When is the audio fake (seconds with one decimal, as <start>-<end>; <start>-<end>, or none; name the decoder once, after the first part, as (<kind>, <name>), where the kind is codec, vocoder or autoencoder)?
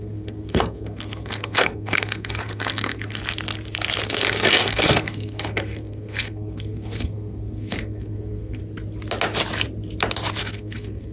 0.0-3.2 (codec, SNAC); 4.1-8.6; 10.4-11.1